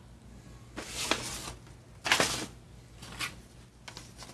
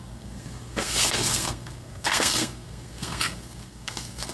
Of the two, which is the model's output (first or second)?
second